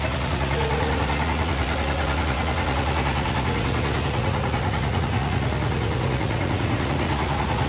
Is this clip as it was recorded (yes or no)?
no